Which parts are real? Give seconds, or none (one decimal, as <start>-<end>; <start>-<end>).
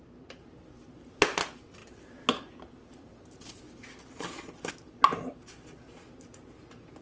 0.0-7.0